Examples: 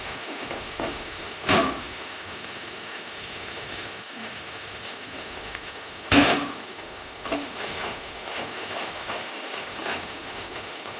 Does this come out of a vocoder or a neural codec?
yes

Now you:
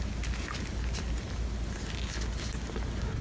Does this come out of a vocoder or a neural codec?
no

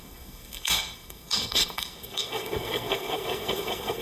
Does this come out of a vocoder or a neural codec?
yes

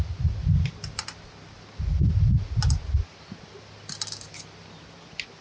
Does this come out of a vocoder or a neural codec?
no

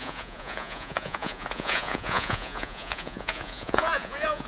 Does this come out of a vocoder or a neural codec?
yes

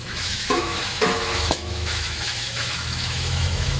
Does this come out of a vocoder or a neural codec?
yes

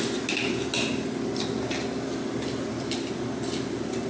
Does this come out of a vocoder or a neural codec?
no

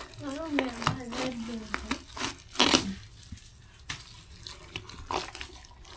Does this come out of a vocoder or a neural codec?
no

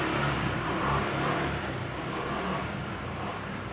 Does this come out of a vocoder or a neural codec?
no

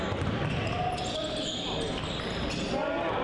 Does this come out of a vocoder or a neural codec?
no